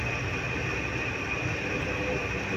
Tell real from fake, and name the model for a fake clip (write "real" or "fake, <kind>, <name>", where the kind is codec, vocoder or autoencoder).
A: real